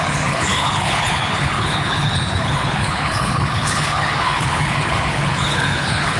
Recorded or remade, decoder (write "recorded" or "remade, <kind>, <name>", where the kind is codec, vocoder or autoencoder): remade, codec, HILCodec